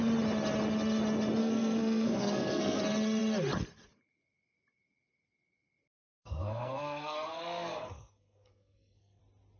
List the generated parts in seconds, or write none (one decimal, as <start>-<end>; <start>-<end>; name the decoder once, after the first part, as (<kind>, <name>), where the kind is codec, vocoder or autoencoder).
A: 1.4-2.8 (codec, SNAC); 6.2-9.2